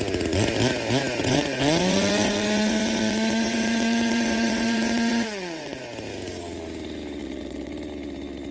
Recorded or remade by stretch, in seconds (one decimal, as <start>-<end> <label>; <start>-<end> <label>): 0.0-1.2 recorded; 1.2-5.8 remade; 5.8-7.2 recorded; 7.2-7.7 remade; 7.7-8.5 recorded